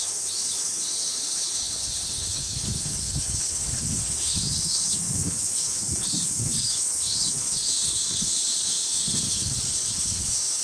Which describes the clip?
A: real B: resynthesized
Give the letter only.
B